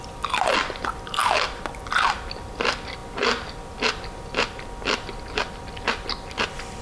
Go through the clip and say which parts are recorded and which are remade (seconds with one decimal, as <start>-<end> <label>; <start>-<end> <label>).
0.0-6.8 recorded